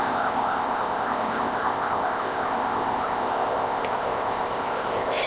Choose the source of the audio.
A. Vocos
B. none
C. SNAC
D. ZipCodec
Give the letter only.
D